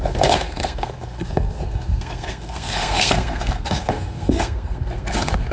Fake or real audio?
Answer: fake